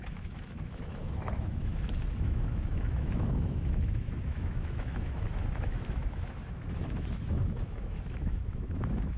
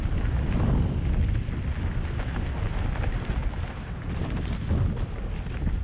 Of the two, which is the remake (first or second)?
first